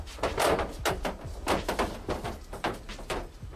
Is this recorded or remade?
recorded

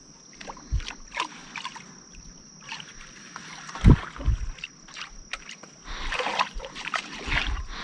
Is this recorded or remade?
recorded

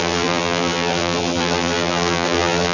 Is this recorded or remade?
remade